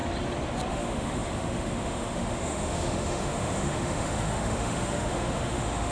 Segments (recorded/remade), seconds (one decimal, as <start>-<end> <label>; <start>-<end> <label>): 0.0-0.7 recorded; 0.7-5.9 remade